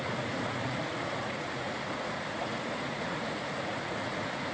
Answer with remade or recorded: remade